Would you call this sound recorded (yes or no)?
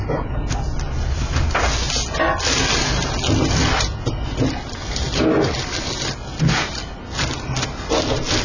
yes